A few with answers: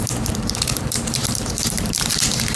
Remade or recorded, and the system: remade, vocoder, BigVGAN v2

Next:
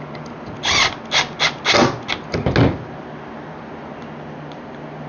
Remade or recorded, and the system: recorded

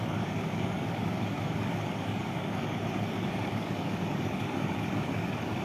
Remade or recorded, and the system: remade, codec, DAC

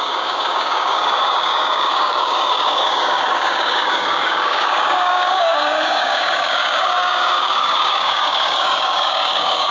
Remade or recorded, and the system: remade, codec, DAC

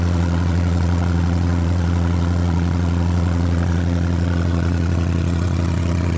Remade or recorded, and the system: remade, vocoder, Vocos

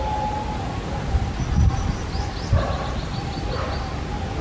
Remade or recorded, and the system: recorded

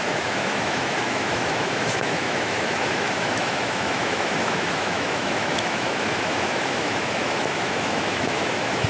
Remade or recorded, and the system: remade, autoencoder, DAC-VAE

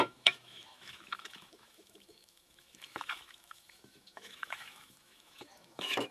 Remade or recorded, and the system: remade, autoencoder, DAC-VAE